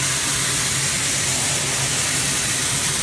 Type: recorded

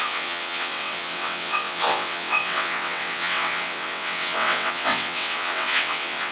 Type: remade